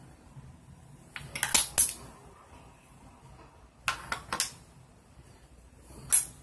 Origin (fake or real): real